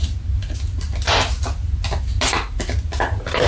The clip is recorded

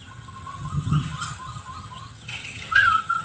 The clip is remade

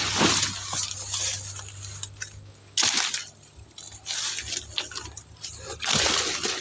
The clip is recorded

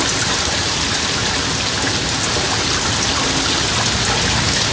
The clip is recorded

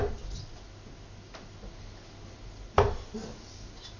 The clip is recorded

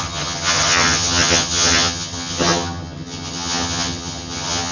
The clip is remade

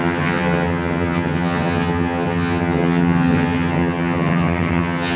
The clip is remade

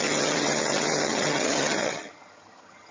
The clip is remade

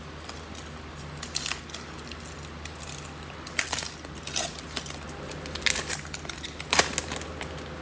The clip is recorded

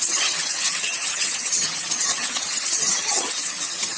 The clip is remade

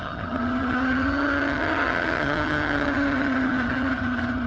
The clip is remade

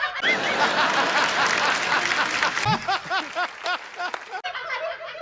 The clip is recorded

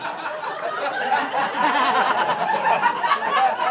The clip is recorded